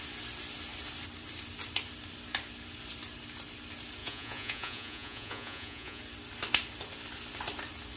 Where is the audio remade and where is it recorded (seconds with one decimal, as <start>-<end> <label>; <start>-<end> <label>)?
0.0-4.0 recorded; 4.0-6.0 remade; 6.0-8.0 recorded